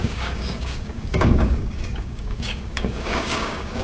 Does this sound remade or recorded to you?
remade